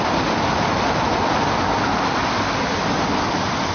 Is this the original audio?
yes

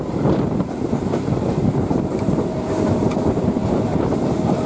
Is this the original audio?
no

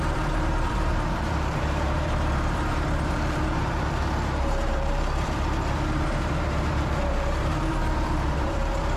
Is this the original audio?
no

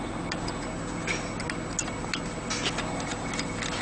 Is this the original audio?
yes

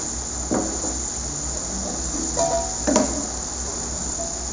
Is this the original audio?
yes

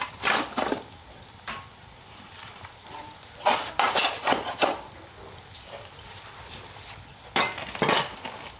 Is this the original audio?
no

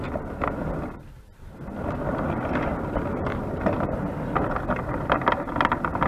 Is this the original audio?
yes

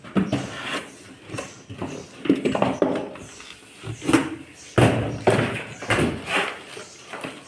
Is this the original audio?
yes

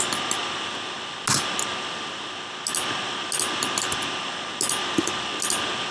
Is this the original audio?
yes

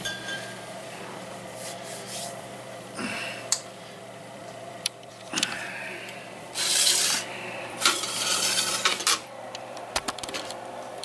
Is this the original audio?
no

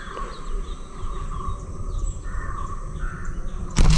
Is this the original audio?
no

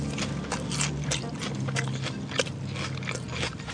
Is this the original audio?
yes